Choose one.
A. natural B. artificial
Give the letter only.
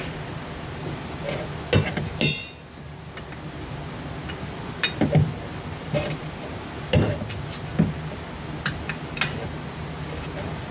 A